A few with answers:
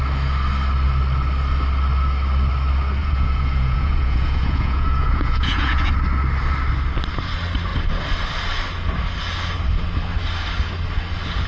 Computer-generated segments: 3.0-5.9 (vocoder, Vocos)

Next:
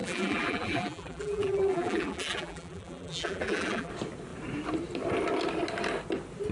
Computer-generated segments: 0.0-3.9 (vocoder, BigVGAN v2)

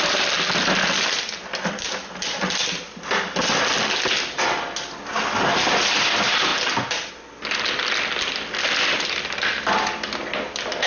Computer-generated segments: none